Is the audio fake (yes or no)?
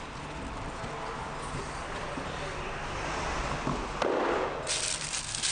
no